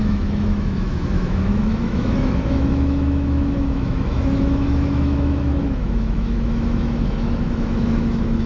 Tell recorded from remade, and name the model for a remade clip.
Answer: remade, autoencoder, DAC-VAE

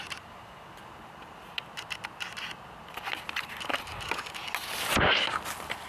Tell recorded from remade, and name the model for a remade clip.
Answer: recorded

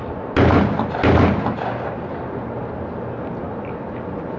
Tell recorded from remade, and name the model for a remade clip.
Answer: recorded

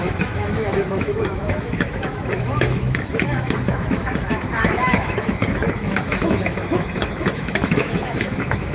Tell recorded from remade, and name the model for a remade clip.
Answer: remade, autoencoder, DAC-VAE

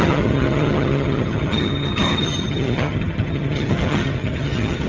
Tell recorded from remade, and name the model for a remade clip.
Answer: remade, vocoder, HiFi-GAN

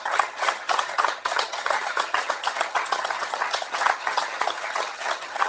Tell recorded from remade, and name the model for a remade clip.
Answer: remade, vocoder, HiFi-GAN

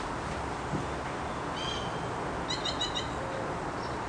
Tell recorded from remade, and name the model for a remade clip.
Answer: recorded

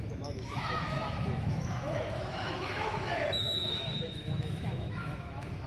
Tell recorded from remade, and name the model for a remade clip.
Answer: remade, autoencoder, DAC-VAE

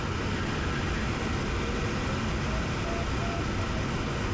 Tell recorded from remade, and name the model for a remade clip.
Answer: recorded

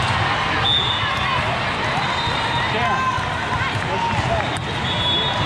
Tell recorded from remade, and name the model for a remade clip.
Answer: recorded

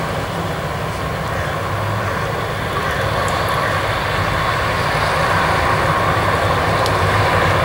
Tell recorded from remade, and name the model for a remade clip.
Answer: recorded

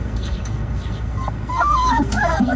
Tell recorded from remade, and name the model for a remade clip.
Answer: remade, codec, SNAC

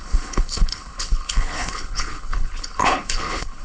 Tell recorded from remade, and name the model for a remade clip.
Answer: remade, codec, HILCodec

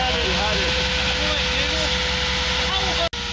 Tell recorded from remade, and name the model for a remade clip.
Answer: recorded